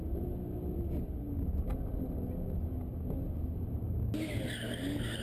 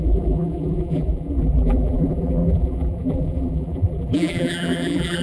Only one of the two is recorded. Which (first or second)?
first